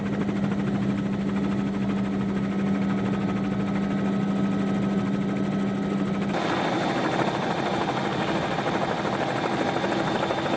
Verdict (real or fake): real